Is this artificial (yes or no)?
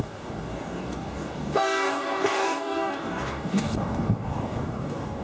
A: yes